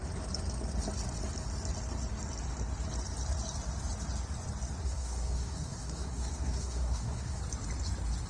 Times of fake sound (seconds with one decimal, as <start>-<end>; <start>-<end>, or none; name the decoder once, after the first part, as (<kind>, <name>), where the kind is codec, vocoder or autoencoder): 4.8-7.4 (codec, SNAC)